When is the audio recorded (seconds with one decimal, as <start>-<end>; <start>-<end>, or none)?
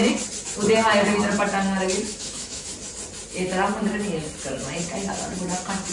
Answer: 0.0-2.1; 2.7-5.9